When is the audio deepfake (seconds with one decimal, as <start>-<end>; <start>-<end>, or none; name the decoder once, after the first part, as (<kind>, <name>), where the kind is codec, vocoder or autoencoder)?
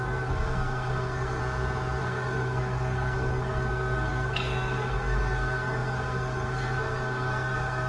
0.0-1.4 (codec, SNAC); 2.0-7.9